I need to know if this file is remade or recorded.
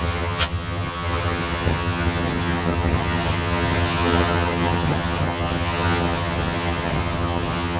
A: remade